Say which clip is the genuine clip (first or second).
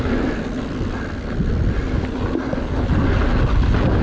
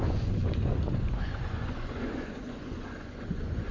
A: first